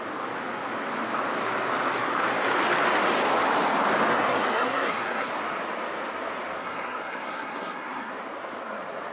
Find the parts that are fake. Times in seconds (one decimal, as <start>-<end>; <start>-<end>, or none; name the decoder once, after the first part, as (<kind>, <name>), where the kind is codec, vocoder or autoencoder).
4.1-5.3 (codec, SNAC); 6.6-8.1